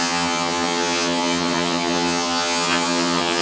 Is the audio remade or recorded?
remade